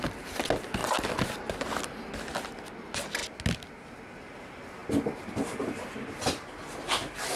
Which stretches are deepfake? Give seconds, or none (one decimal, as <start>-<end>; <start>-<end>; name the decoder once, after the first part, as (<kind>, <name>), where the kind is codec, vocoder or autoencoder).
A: none